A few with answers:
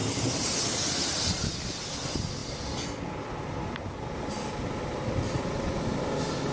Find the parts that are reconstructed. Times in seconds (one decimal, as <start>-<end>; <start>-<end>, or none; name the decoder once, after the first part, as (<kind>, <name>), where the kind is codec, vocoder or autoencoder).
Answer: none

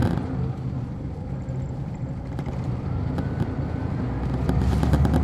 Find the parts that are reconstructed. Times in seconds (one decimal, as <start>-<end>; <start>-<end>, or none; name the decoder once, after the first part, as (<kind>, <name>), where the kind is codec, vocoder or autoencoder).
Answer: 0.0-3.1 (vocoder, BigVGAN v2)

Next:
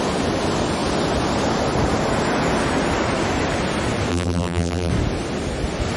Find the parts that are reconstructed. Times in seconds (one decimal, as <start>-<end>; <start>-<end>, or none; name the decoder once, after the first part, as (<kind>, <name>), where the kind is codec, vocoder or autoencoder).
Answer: 4.1-4.9 (vocoder, BigVGAN v2)

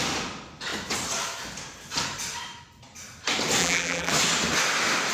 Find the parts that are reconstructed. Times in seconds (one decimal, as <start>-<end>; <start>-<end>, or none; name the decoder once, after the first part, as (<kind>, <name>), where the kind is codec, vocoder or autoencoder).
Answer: 3.6-4.1 (vocoder, BigVGAN v2)

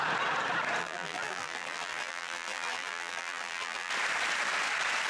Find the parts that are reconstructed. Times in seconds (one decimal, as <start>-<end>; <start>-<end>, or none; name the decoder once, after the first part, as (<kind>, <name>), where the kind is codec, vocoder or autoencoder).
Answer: 0.8-3.9 (vocoder, BigVGAN v2)

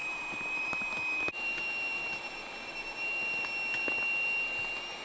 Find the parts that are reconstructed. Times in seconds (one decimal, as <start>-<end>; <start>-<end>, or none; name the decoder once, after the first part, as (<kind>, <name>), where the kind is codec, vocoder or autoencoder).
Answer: 0.0-0.9 (vocoder, BigVGAN v2)